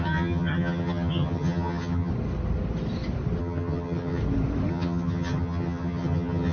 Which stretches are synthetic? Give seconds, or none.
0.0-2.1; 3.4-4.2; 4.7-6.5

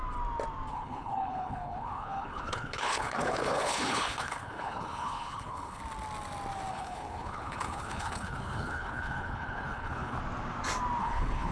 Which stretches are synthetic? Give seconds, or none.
0.7-5.8; 6.7-10.2; 11.0-11.5

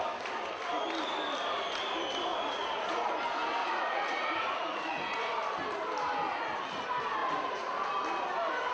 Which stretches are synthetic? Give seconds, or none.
2.3-3.1; 3.6-5.3; 7.2-7.9